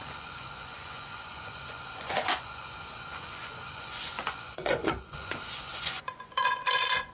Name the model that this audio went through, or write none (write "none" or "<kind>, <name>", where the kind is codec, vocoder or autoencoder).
vocoder, Vocos